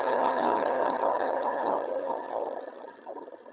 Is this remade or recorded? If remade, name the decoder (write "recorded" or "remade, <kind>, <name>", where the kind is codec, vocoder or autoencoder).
remade, vocoder, HiFi-GAN